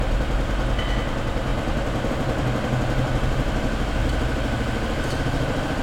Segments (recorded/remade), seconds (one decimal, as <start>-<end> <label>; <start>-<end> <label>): 0.0-4.0 remade; 4.0-5.2 recorded; 5.2-5.8 remade

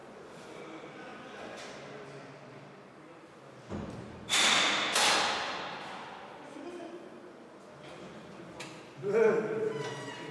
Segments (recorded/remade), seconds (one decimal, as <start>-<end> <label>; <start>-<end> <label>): 0.0-0.6 remade; 0.6-1.1 recorded; 1.1-1.6 remade; 1.6-6.8 recorded; 6.8-7.4 remade; 7.4-10.3 recorded

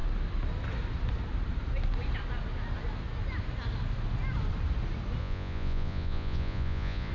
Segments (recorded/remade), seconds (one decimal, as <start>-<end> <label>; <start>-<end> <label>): 0.0-5.2 recorded; 5.2-7.1 remade